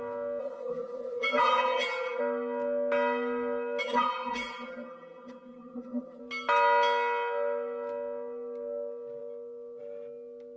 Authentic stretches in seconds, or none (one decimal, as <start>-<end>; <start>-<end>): 0.0-0.4; 2.2-3.8; 6.2-10.6